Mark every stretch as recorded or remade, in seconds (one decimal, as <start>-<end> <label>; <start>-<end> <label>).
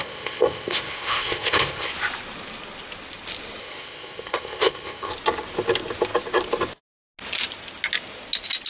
0.0-1.9 remade; 1.9-3.6 recorded; 3.6-5.1 remade; 5.1-8.7 recorded